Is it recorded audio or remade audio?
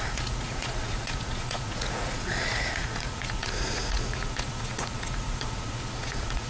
remade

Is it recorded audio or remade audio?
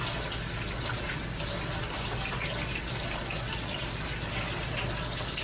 recorded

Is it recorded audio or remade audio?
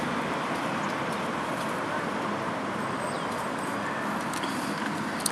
recorded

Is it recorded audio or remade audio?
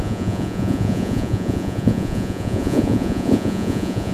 remade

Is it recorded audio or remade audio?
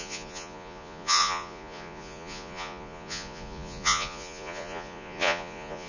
remade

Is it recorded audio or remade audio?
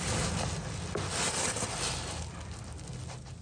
recorded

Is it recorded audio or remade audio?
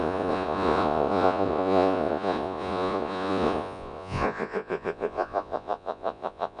remade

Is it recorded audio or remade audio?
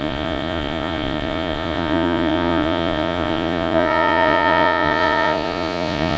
remade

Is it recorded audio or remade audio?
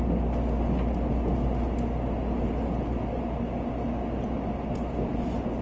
recorded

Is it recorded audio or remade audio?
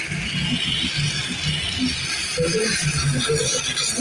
recorded